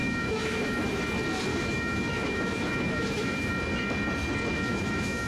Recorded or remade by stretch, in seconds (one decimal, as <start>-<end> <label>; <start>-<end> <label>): 0.0-1.0 remade; 1.0-1.5 recorded; 1.5-3.5 remade; 3.5-4.5 recorded; 4.5-5.3 remade